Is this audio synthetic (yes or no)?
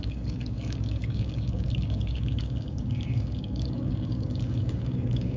yes